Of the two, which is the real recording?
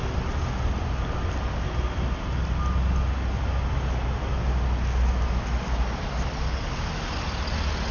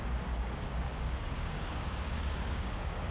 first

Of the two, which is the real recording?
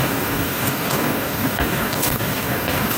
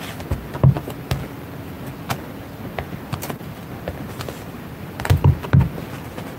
second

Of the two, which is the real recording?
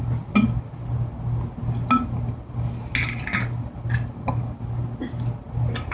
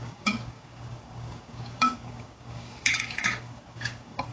first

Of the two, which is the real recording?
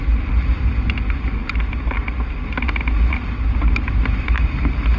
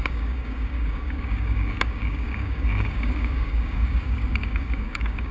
first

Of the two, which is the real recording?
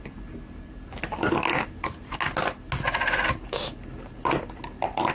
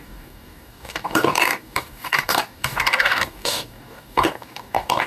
first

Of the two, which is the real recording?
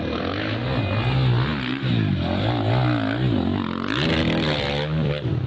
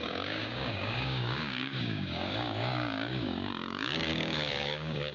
first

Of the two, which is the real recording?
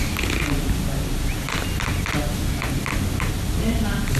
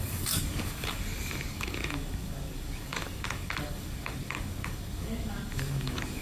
first